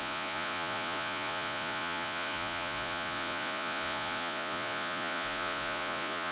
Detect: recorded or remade remade